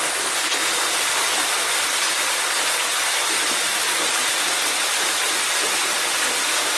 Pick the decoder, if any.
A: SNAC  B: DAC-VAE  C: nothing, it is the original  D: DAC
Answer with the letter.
C